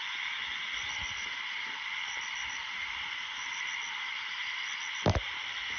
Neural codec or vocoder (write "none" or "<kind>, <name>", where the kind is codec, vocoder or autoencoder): none